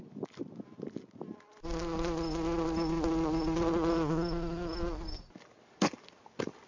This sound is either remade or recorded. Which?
recorded